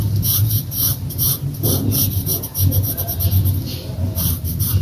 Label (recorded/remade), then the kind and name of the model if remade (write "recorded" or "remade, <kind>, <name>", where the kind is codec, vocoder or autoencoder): remade, vocoder, BigVGAN v2